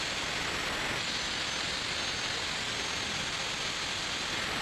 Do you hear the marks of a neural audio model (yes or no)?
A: no